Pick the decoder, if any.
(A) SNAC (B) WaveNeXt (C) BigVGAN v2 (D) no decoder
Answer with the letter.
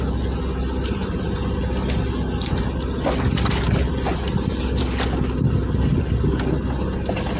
D